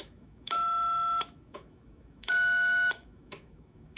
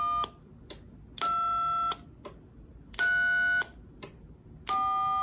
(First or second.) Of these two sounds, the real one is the second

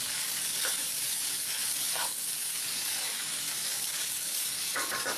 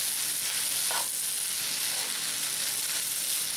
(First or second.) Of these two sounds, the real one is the second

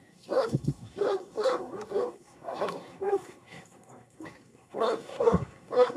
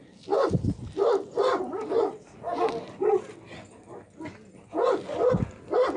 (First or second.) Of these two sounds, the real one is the second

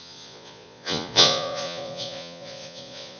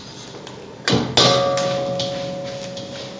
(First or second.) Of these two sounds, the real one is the second